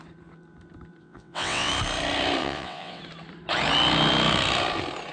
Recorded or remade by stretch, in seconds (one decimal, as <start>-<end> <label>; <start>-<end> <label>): 0.0-1.0 recorded; 1.0-1.7 remade; 1.7-2.4 recorded; 2.4-3.0 remade; 3.0-5.1 recorded